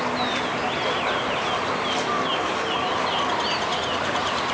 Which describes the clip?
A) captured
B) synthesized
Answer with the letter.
A